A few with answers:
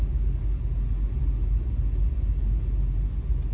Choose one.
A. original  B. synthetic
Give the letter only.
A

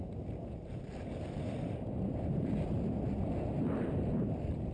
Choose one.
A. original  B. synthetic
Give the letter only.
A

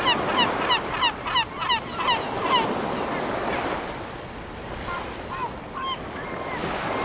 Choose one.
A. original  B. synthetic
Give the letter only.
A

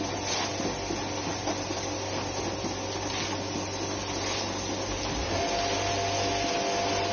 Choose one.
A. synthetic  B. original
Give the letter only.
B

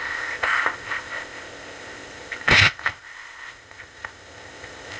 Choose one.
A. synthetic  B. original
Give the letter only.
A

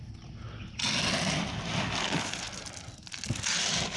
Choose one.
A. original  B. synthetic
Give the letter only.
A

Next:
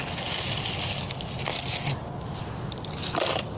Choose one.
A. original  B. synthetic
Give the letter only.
A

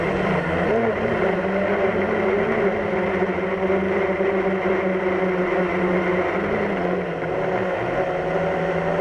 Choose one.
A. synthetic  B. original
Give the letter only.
B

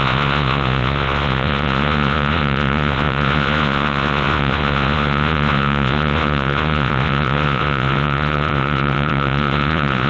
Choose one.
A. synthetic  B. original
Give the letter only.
A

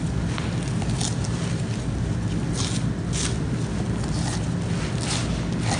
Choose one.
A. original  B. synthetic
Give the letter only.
A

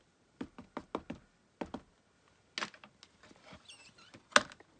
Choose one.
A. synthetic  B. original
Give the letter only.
B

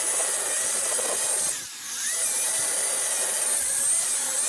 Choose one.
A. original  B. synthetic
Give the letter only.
A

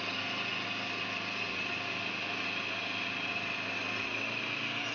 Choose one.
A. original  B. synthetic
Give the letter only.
A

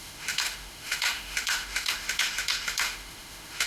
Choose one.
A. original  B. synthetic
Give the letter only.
B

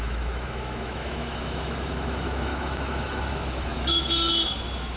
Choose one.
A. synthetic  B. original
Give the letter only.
A